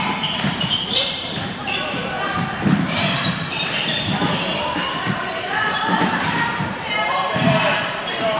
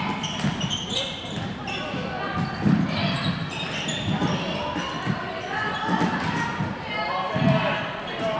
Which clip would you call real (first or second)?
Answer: second